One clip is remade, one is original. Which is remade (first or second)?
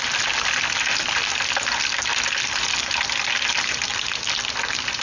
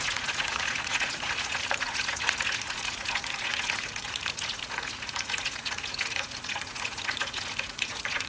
second